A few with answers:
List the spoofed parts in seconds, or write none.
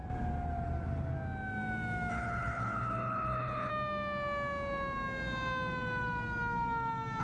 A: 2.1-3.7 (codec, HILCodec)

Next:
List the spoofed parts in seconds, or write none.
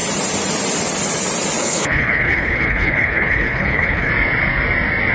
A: 1.6-4.1 (codec, HILCodec)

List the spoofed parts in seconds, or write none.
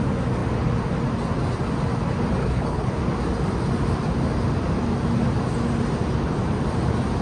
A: 2.4-3.0 (codec, HILCodec)